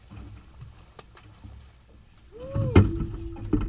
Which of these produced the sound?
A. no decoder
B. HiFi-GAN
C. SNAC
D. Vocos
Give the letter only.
A